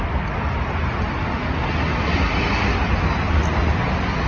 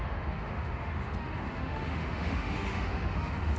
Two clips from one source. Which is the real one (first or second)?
first